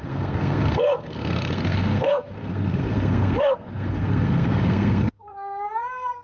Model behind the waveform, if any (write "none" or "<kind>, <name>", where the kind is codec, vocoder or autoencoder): codec, SNAC